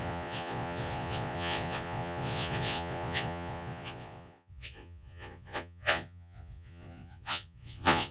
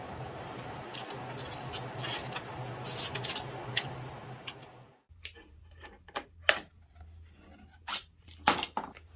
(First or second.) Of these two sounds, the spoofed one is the first